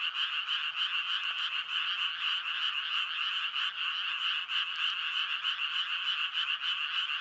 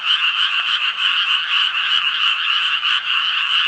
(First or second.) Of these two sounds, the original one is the first